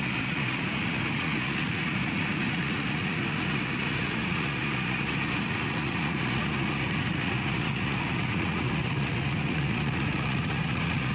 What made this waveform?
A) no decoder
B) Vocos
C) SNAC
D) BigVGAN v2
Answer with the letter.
B